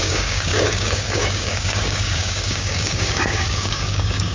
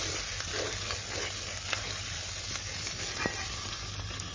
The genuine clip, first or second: second